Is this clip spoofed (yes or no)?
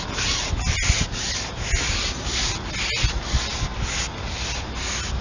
no